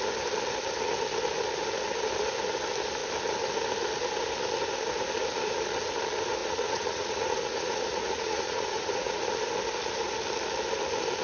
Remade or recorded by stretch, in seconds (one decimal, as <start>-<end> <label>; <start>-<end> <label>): 0.0-6.4 recorded; 6.4-9.2 remade; 9.2-11.2 recorded